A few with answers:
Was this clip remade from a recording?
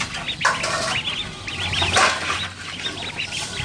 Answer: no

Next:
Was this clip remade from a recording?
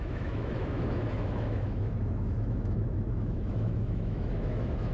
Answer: yes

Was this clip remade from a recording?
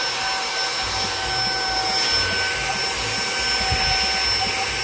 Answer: no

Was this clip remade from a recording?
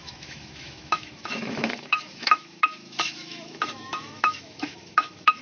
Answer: yes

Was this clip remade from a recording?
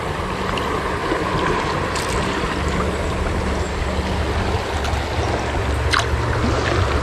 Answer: no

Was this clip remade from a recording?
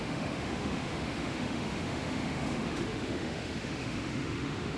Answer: yes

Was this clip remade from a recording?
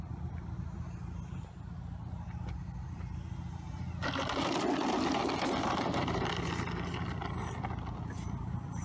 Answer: no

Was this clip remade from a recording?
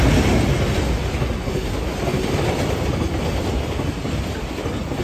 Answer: no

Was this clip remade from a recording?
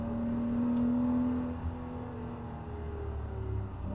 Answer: no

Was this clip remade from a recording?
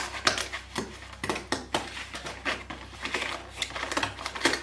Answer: no